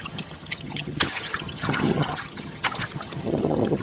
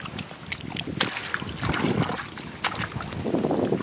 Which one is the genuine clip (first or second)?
second